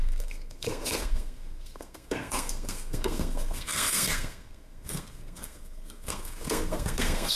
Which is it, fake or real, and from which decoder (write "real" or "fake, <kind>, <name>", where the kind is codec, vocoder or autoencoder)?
fake, codec, SNAC